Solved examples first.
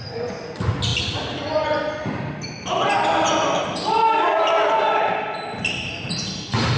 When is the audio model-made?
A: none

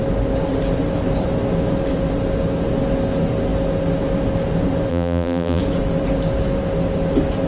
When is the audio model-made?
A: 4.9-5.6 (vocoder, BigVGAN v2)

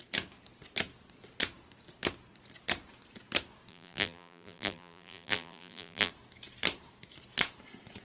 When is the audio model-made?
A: 3.7-6.1 (vocoder, BigVGAN v2)

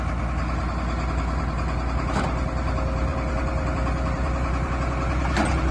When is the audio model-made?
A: 3.1-4.7 (vocoder, BigVGAN v2)

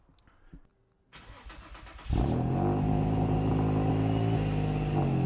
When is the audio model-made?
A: none

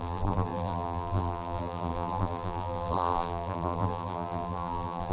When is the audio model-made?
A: 0.0-5.1 (vocoder, BigVGAN v2)